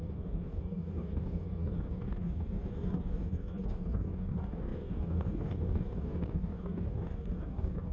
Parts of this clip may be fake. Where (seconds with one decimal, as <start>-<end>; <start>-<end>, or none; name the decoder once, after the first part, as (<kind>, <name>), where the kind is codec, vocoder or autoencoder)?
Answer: 0.0-7.9 (codec, DAC)